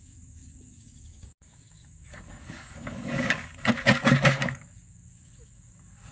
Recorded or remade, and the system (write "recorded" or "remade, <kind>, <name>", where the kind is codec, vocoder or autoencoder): remade, codec, DAC